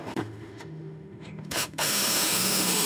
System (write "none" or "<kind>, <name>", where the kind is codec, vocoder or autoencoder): autoencoder, DAC-VAE